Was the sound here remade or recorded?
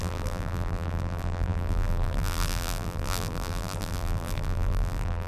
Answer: remade